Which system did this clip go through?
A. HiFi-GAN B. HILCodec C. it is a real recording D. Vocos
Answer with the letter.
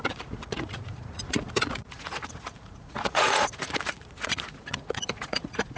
D